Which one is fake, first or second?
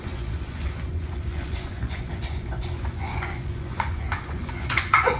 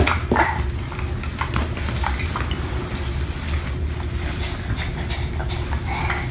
first